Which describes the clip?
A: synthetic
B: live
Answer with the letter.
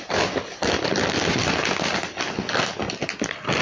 B